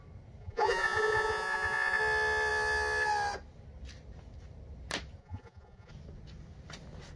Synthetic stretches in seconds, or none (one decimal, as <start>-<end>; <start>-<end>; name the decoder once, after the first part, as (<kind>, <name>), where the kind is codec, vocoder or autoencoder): 0.4-2.0 (vocoder, Vocos); 5.2-5.9